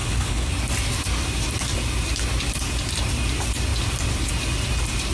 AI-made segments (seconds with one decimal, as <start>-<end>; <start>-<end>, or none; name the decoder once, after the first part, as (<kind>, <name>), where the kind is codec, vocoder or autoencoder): 0.0-0.5 (codec, HILCodec)